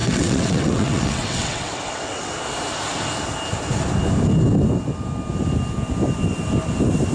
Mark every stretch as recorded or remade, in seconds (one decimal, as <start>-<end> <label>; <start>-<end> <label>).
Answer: 0.0-2.3 remade; 2.3-7.1 recorded